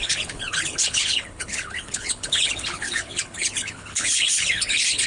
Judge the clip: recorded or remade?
remade